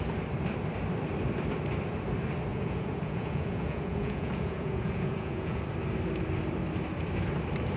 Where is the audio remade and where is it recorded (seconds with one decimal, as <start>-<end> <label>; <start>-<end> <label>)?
0.0-2.5 recorded; 2.5-5.6 remade; 5.6-7.8 recorded